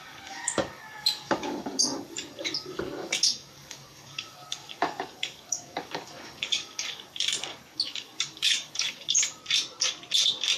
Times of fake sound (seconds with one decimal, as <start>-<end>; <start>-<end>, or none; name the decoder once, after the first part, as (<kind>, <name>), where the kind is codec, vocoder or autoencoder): 0.0-9.4 (codec, DAC)